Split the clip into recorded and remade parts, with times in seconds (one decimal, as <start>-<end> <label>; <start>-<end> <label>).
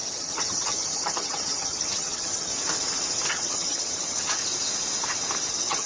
0.0-2.5 remade; 2.5-3.3 recorded; 3.3-4.4 remade; 4.4-5.5 recorded; 5.5-5.9 remade